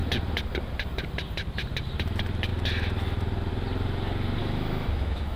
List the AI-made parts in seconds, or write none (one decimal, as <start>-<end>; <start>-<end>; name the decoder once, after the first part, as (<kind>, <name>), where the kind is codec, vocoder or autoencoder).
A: 4.4-5.4 (autoencoder, DAC-VAE)